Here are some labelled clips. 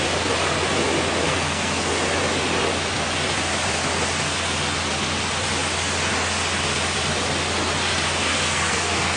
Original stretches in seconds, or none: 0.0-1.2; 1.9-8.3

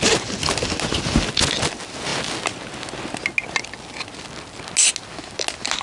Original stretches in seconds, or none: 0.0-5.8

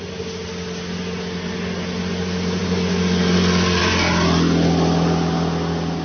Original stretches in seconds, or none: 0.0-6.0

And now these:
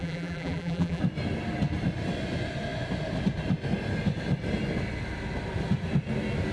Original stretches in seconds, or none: 1.0-6.5